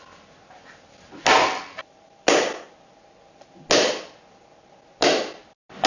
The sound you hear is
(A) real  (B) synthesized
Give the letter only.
A